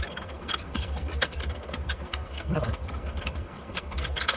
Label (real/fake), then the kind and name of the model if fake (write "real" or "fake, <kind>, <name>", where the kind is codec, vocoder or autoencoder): fake, codec, SNAC